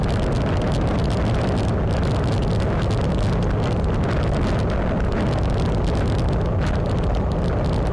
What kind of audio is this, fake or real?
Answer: real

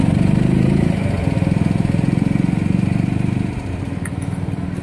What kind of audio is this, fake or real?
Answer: real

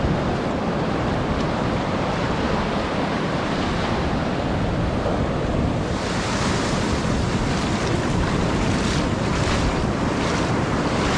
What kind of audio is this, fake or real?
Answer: fake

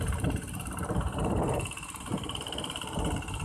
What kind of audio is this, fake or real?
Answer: fake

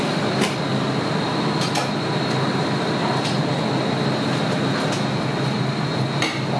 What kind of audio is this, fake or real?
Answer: real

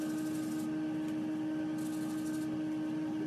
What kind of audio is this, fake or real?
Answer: real